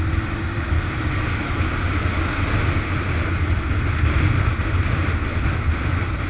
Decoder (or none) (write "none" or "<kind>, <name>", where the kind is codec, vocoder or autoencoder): none